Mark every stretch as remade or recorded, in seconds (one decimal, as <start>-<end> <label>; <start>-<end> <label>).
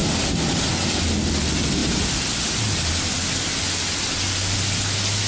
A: 0.0-0.7 remade; 0.7-5.3 recorded